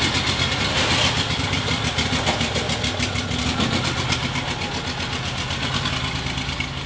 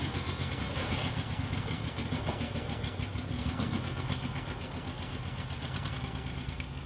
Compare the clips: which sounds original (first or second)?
first